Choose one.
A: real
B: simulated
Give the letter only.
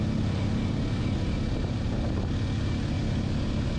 A